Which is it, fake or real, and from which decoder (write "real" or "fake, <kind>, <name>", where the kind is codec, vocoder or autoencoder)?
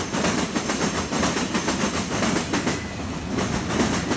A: real